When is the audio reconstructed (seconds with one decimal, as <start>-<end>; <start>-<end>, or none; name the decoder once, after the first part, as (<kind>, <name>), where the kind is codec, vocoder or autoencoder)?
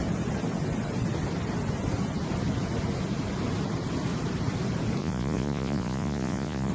5.0-6.7 (vocoder, Vocos)